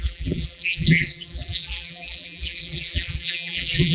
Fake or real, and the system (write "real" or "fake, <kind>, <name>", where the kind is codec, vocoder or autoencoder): fake, vocoder, BigVGAN v2